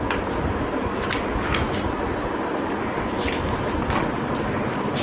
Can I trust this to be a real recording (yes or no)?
yes